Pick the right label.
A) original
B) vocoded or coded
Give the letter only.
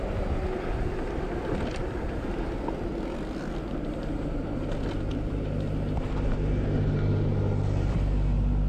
A